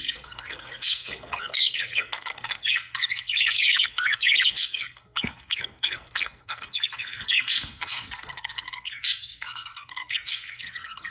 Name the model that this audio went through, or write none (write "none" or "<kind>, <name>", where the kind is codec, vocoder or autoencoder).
codec, SNAC